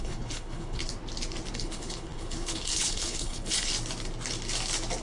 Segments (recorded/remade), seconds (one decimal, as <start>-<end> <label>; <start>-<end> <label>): 0.0-0.8 remade; 0.8-1.5 recorded; 1.5-3.7 remade; 3.7-5.0 recorded